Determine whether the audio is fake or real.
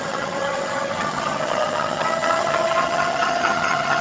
fake